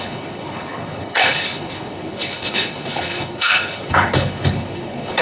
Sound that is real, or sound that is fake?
fake